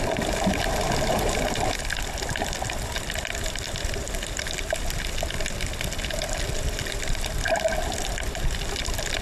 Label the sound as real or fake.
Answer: fake